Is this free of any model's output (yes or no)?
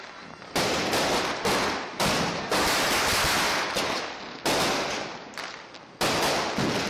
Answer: yes